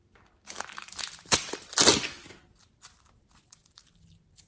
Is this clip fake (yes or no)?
no